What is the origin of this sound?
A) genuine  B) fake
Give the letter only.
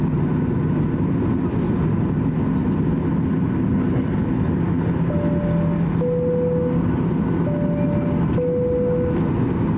A